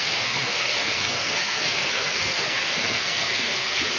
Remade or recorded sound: remade